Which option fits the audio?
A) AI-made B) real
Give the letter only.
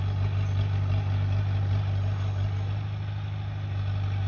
B